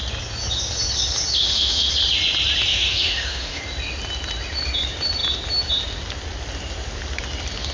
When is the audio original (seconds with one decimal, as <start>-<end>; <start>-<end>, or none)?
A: 0.0-1.4; 1.9-2.7; 3.6-7.7